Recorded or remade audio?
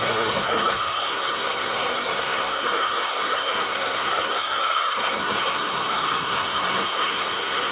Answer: remade